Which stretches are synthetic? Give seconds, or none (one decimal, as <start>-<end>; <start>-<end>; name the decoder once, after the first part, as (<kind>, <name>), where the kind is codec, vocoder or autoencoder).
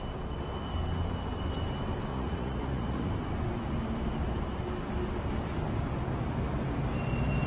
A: 2.1-3.1 (vocoder, Vocos)